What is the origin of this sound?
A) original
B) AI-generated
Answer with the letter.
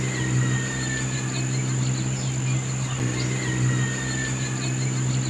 A